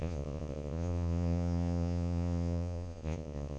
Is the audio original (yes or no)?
no